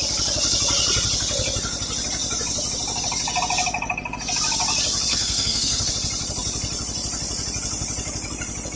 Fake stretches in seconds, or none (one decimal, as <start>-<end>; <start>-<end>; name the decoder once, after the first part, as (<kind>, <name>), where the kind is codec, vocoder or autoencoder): 5.1-5.9 (codec, SNAC)